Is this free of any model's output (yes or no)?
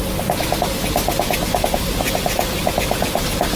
yes